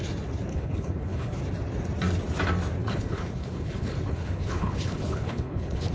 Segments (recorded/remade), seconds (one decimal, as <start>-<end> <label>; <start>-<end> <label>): 0.0-0.5 recorded; 0.5-1.4 remade; 1.4-2.8 recorded; 2.8-5.9 remade